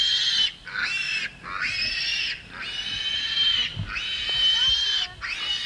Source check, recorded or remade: recorded